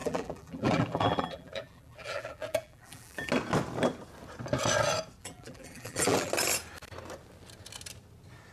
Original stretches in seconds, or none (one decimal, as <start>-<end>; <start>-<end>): 3.3-5.2; 6.3-8.5